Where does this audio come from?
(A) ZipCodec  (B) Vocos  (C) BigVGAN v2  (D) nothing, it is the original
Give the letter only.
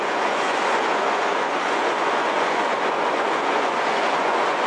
B